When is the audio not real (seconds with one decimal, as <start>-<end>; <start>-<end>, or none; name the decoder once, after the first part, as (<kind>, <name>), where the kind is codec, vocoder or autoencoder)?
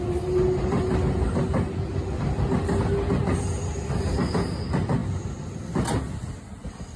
none